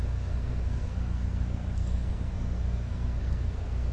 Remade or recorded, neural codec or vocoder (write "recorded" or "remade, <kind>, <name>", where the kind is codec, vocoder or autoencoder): remade, codec, SNAC